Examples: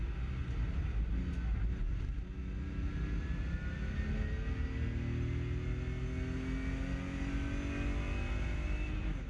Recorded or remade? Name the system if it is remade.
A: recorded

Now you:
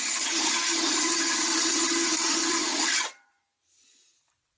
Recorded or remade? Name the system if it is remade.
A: remade, vocoder, BigVGAN v2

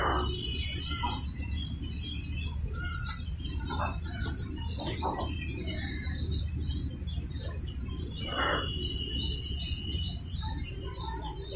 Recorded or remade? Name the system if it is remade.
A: recorded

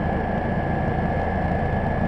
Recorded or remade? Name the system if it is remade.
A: recorded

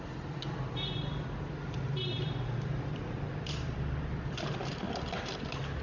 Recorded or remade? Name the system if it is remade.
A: remade, vocoder, BigVGAN v2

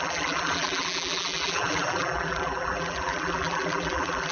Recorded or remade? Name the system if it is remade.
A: remade, vocoder, BigVGAN v2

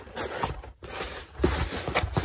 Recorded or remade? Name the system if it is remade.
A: recorded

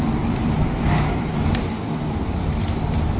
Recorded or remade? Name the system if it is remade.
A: remade, vocoder, BigVGAN v2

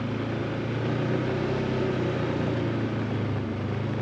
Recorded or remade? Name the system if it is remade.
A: recorded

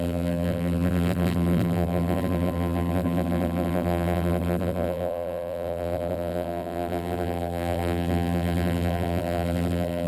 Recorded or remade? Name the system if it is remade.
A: remade, vocoder, BigVGAN v2